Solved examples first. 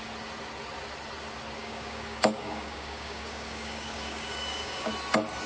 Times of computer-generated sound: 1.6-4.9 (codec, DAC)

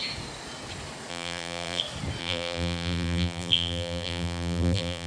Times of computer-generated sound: 1.1-1.8 (vocoder, BigVGAN v2); 2.2-5.1